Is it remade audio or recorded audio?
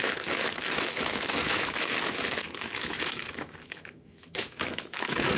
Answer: remade